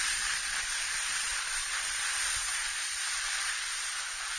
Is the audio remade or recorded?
remade